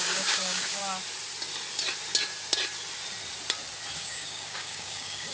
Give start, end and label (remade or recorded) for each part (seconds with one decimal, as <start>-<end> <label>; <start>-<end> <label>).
0.0-0.8 remade; 0.8-4.0 recorded; 4.0-5.3 remade

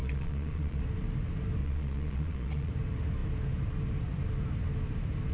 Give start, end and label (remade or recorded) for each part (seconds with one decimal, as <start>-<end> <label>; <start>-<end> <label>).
0.0-0.8 remade; 0.8-1.6 recorded; 1.6-2.7 remade; 2.7-5.3 recorded